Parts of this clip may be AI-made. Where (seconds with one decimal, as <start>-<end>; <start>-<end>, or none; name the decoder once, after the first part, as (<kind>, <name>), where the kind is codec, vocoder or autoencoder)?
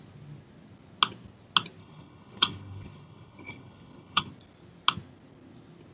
1.8-4.3 (codec, HILCodec)